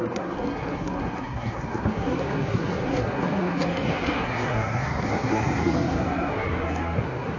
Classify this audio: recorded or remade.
remade